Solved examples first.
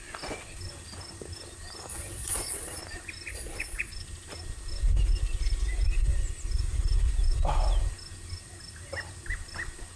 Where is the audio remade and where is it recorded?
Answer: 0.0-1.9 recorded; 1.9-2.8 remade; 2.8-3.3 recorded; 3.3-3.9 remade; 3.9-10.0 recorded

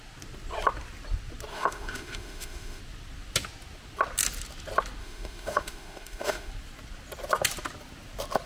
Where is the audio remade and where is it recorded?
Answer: 0.0-1.5 recorded; 1.5-2.8 remade; 2.8-5.0 recorded; 5.0-6.5 remade; 6.5-8.5 recorded

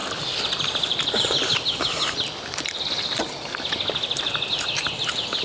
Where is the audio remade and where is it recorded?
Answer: 0.0-5.4 remade